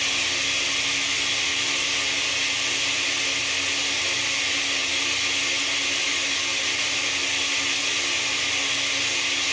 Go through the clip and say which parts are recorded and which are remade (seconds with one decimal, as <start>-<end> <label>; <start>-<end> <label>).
0.0-9.5 recorded